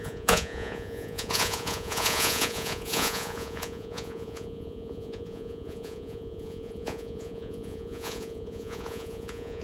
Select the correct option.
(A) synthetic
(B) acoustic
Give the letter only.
A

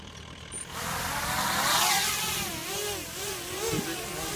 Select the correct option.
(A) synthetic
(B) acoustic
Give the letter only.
B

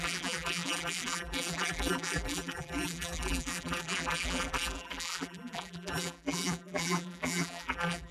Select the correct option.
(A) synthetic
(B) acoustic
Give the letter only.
A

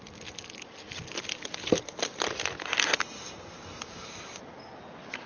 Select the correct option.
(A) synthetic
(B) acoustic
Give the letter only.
B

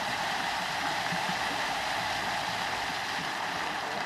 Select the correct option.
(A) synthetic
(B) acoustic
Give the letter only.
A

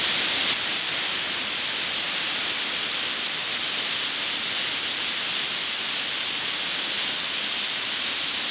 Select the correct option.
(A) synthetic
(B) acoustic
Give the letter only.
B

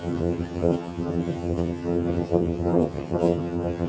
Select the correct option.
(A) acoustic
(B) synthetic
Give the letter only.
B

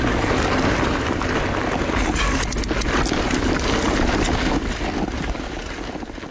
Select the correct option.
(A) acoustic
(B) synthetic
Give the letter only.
A